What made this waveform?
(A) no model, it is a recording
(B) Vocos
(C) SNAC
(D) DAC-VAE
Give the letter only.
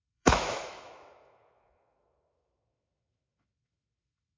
D